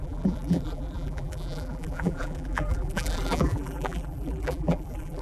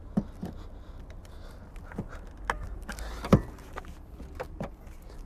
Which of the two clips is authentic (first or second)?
second